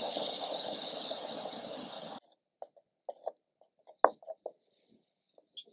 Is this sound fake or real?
real